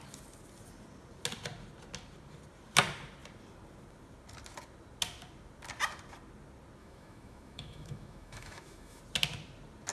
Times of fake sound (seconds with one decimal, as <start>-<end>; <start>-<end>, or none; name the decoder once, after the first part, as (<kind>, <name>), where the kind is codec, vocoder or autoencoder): 6.8-9.0 (autoencoder, DAC-VAE)